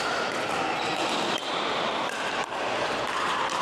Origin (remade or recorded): recorded